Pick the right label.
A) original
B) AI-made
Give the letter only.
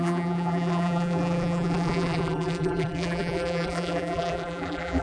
B